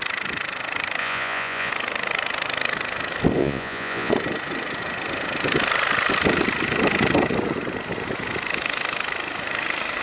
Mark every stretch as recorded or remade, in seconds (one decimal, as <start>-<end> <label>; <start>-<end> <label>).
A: 0.0-1.0 recorded; 1.0-1.7 remade; 1.7-3.4 recorded; 3.4-4.1 remade; 4.1-10.0 recorded